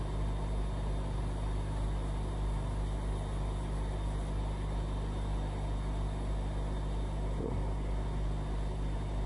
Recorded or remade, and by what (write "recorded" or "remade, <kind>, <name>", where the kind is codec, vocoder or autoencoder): recorded